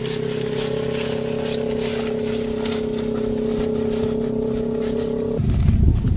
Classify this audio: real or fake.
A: real